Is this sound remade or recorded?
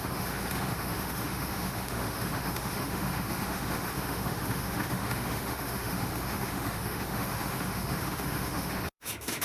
remade